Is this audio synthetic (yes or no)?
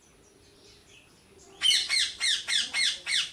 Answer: no